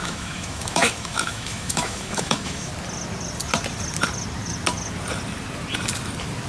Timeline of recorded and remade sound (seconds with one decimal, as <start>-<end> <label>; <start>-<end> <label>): 0.0-2.7 remade; 2.7-6.5 recorded